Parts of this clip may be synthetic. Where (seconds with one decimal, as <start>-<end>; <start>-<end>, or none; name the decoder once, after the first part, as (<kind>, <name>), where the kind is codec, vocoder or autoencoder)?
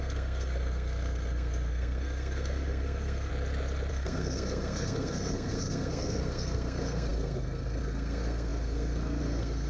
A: 0.0-3.3 (codec, SNAC); 3.9-9.7